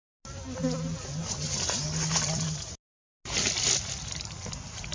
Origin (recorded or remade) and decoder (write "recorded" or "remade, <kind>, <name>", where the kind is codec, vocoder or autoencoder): recorded